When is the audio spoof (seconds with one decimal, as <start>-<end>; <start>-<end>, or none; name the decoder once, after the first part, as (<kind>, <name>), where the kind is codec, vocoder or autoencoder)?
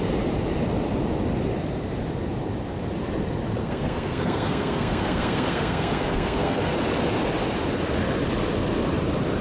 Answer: 3.6-6.6 (codec, SNAC)